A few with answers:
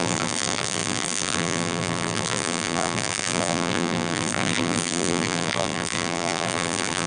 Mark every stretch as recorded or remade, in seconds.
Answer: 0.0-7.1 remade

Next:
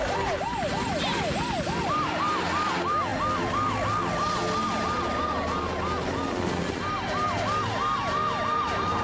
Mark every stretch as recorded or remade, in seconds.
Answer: 0.0-9.0 recorded